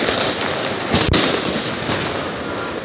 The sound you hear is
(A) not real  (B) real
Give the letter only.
B